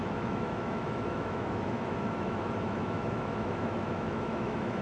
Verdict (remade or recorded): remade